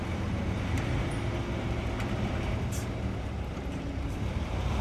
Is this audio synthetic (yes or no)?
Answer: yes